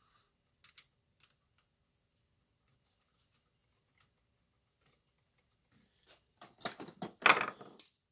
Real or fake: real